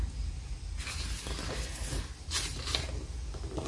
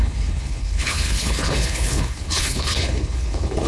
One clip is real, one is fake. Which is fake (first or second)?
second